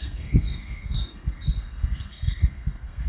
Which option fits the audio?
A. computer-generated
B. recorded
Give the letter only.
A